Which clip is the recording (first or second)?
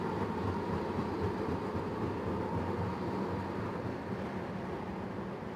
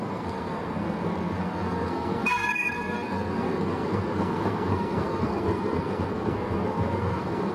first